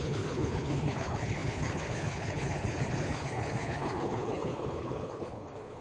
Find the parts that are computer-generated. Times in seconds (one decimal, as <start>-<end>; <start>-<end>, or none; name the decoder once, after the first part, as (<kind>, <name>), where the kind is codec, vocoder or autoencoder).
0.0-5.8 (codec, HILCodec)